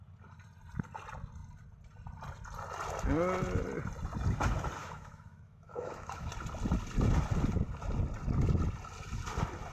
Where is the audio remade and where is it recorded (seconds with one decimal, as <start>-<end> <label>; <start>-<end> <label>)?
0.0-4.8 recorded; 4.8-6.3 remade; 6.3-9.7 recorded